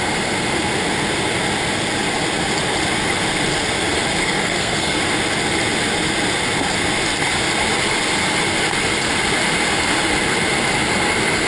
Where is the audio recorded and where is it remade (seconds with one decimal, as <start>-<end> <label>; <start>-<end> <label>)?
0.0-4.2 recorded; 4.2-5.0 remade; 5.0-11.5 recorded